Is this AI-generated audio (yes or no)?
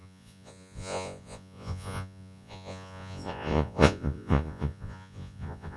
yes